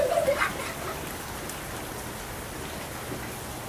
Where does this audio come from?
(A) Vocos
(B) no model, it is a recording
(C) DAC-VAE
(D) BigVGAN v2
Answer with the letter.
B